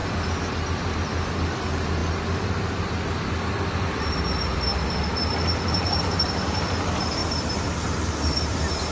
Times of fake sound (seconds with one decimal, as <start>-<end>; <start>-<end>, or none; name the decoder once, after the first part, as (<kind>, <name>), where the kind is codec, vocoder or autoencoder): 1.6-2.0 (vocoder, BigVGAN v2); 5.7-7.2; 8.2-8.9